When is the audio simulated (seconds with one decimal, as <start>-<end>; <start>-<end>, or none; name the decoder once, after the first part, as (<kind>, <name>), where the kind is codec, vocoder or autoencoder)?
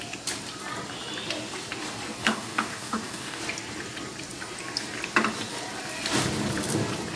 2.2-3.4 (codec, DAC)